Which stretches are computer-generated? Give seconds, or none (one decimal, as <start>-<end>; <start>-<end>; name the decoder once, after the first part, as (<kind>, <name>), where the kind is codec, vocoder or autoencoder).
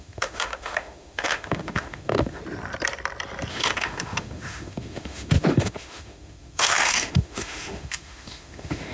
0.0-2.4 (autoencoder, DAC-VAE); 3.5-8.9